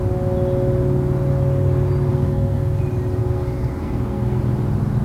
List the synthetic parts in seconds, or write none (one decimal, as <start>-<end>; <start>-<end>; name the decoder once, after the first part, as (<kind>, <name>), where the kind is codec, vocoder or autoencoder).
2.1-2.8 (codec, SNAC); 3.2-4.4